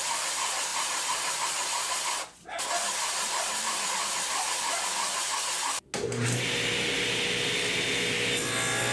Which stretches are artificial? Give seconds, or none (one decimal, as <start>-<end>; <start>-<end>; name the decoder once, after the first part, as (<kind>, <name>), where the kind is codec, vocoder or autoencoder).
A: 0.7-2.6 (vocoder, BigVGAN v2)